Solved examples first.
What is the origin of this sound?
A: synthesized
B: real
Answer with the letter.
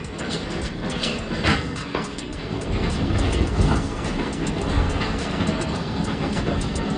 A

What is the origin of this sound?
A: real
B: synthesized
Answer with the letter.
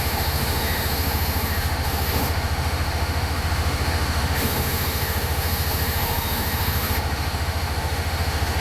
B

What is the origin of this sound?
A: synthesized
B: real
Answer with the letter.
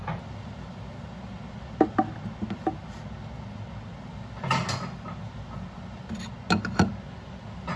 B